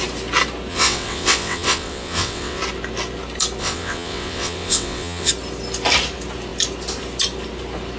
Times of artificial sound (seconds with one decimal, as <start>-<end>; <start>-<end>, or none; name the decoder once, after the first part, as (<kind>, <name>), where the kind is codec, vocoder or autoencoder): 0.7-2.6 (vocoder, WaveNeXt); 3.6-5.3